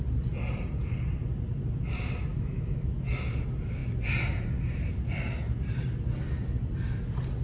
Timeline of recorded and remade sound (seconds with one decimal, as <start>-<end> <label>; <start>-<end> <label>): 0.0-2.3 recorded; 2.3-3.2 remade; 3.2-7.4 recorded